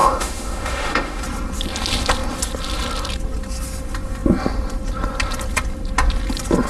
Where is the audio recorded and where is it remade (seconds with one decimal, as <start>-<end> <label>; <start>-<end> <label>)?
0.0-1.2 remade; 1.2-6.7 recorded